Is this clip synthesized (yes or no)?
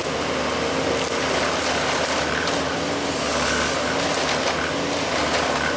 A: no